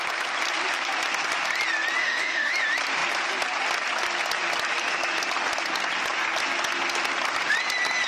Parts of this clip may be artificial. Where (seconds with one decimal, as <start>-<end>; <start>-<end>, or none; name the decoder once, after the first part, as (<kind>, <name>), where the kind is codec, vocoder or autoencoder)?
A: 2.0-2.5 (autoencoder, DAC-VAE)